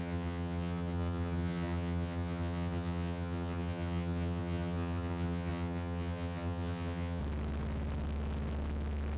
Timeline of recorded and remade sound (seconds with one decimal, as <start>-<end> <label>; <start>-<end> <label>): 0.0-7.2 remade; 7.2-9.2 recorded